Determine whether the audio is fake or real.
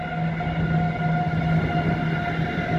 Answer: real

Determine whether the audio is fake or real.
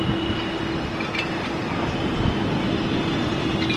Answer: real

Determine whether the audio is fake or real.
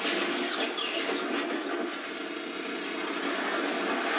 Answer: real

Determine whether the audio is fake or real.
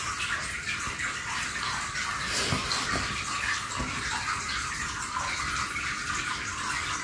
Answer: real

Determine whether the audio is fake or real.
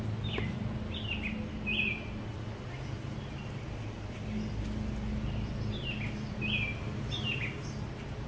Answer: real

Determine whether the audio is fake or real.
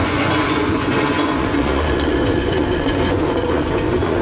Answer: fake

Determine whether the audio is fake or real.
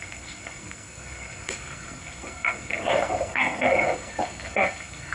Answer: fake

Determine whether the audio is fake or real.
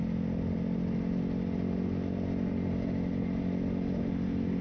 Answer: real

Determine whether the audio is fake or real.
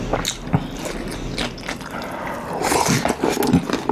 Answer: real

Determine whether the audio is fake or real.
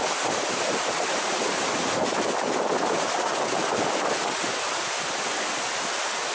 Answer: real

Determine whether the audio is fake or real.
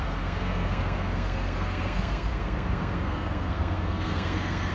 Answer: fake